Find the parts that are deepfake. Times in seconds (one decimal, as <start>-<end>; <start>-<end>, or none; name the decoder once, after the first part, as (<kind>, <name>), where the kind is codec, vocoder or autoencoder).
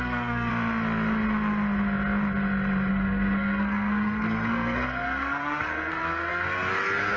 0.0-0.5 (codec, SNAC); 2.9-7.2